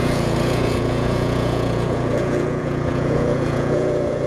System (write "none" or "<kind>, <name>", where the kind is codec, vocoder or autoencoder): vocoder, Vocos